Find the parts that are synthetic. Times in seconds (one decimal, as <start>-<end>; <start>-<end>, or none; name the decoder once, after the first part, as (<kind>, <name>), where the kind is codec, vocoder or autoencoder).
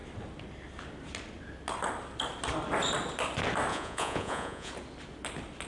3.7-4.7 (vocoder, Vocos)